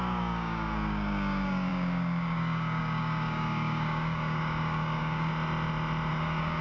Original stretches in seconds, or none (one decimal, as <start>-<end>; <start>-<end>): 5.3-6.1